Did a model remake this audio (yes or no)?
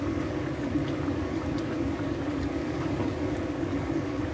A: yes